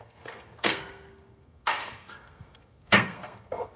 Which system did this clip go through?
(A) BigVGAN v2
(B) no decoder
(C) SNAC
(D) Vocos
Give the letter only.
C